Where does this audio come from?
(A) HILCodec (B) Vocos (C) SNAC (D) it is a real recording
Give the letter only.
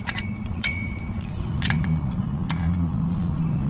B